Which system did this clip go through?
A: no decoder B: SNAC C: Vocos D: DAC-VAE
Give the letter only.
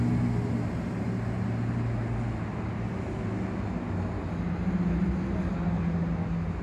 A